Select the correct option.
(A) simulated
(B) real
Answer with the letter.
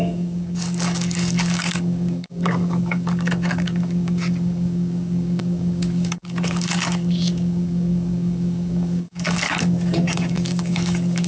A